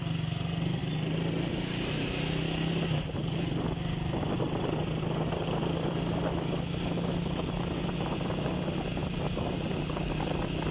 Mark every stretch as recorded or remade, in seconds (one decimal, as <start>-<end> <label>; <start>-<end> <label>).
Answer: 0.0-10.7 recorded